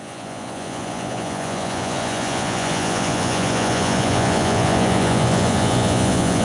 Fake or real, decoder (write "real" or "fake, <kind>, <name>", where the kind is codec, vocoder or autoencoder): fake, vocoder, Vocos